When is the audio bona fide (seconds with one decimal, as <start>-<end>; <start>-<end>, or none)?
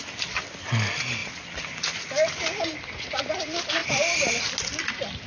0.0-5.3